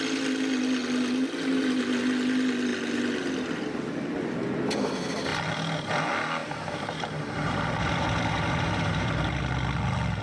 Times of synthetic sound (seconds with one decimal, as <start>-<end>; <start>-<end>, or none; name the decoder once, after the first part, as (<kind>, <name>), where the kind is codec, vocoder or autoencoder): 6.4-9.4 (vocoder, BigVGAN v2)